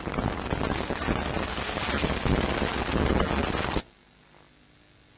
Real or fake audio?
real